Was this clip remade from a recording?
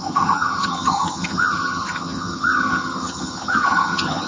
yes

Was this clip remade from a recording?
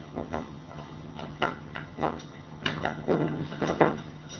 yes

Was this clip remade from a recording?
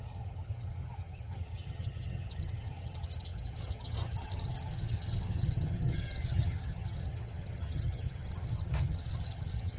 yes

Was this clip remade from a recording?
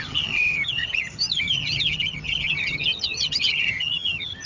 yes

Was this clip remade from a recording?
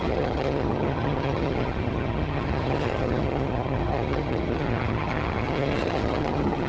yes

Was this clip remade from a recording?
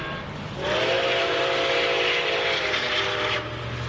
no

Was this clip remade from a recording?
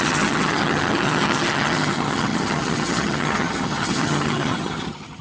yes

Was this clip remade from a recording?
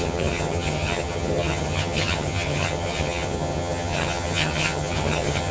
yes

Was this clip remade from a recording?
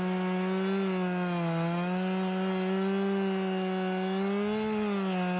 no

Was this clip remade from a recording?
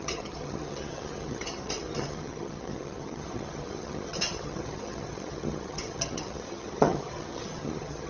yes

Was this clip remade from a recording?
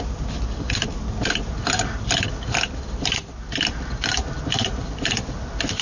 no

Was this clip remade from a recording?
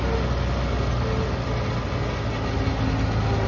no